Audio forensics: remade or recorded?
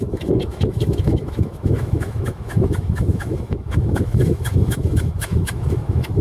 remade